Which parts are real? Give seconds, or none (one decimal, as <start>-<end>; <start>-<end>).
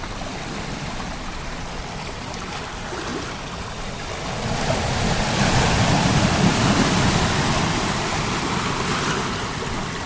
0.0-10.1